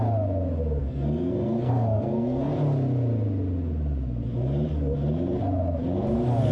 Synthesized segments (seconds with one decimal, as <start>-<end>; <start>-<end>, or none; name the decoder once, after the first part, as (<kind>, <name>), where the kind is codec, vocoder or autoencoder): 0.8-2.5 (codec, SNAC)

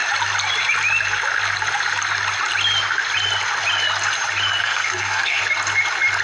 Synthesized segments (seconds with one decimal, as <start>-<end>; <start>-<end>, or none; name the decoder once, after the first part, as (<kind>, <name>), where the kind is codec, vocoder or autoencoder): 4.6-5.4 (codec, SNAC)

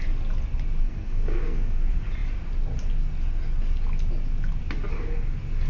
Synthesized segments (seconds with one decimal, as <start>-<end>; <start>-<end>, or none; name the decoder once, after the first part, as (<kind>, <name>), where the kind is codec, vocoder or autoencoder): 0.8-1.8 (codec, SNAC)